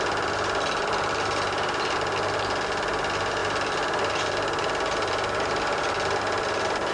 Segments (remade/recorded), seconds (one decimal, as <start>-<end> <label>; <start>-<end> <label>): 0.0-6.9 recorded